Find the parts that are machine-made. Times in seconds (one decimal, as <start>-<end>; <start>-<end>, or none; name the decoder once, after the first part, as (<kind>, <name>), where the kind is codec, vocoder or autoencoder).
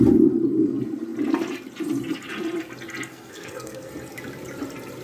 3.1-3.9 (codec, SNAC)